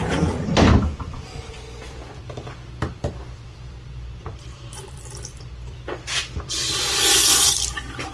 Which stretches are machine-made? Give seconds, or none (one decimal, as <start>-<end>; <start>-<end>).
0.0-8.1